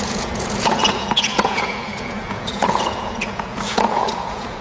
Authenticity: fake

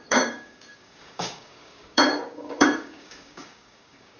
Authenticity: fake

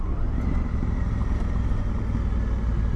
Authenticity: real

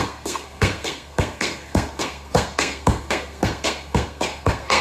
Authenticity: fake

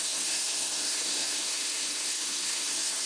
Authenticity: fake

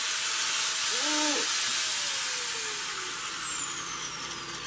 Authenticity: real